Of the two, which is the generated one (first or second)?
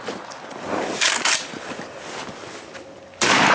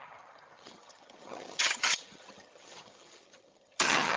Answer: second